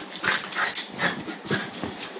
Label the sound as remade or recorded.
recorded